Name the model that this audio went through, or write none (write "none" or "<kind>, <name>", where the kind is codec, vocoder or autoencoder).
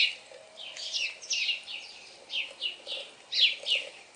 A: none